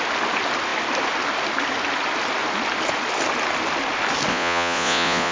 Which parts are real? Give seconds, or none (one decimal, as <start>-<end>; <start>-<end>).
0.0-4.3